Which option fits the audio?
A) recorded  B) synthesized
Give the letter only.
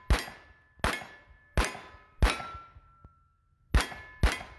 A